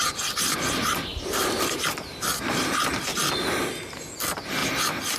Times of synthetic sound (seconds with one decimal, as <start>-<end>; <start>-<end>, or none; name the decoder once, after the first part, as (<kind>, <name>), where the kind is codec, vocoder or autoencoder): none